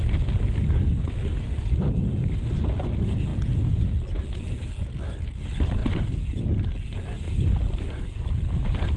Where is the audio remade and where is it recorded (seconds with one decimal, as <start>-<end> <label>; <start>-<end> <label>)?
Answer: 0.0-9.0 recorded